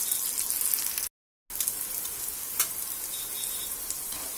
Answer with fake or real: real